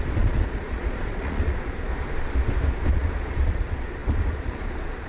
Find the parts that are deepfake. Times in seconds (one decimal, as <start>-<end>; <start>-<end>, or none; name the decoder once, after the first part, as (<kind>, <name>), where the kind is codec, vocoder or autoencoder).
0.0-1.9 (vocoder, Vocos); 2.9-5.1